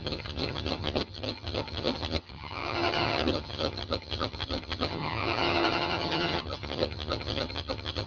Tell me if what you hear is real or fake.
fake